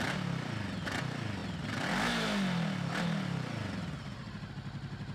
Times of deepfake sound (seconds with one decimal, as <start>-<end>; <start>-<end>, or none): none